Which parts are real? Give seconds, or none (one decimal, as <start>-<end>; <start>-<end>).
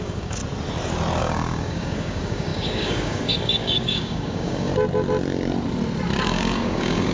0.4-1.2; 4.7-6.2